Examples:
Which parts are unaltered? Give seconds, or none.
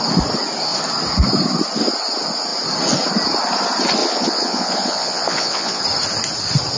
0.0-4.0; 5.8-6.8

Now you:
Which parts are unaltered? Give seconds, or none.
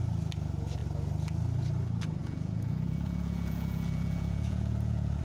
0.0-2.2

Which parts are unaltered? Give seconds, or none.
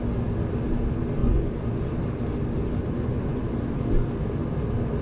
0.0-1.2; 1.7-2.8; 3.4-5.0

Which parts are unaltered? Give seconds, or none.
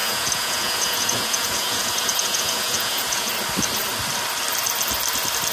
3.3-5.5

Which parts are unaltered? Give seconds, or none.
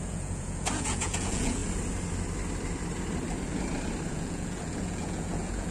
1.6-4.1